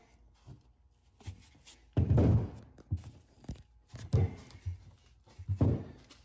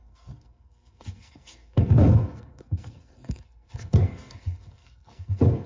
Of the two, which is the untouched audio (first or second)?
first